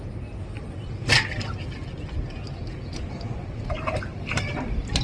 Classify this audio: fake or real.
real